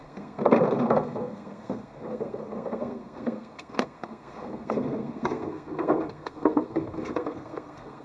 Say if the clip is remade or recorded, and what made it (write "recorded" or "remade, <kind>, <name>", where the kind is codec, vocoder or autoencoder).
remade, codec, SNAC